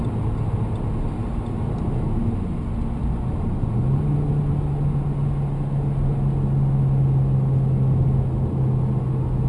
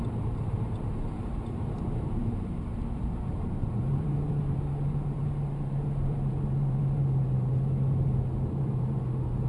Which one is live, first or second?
first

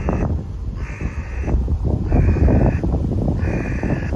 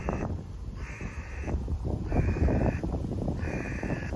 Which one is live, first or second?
first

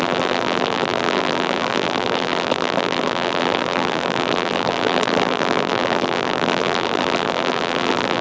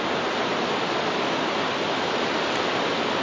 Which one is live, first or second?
second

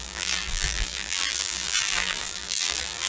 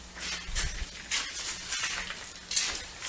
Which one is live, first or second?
second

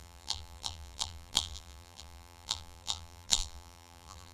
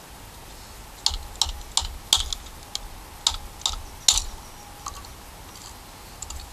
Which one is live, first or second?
second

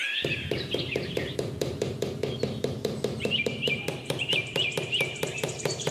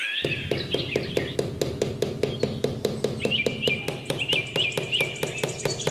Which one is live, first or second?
second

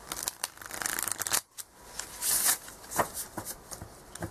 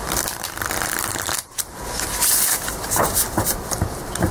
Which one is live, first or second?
first